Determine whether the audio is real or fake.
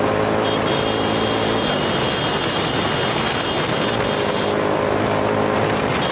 real